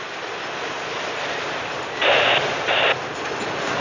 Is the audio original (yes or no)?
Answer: yes